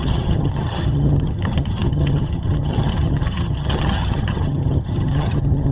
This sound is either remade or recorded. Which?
remade